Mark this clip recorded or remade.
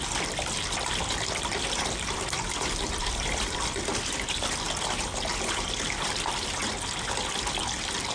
remade